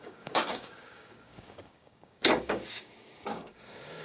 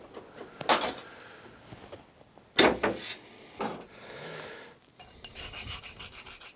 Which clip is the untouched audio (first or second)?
second